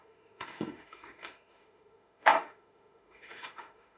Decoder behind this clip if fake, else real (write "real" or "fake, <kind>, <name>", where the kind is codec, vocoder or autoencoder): fake, autoencoder, DAC-VAE